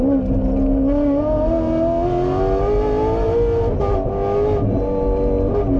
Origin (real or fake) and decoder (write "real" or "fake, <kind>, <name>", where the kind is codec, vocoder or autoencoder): real